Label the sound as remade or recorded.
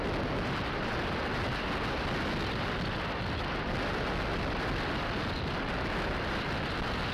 recorded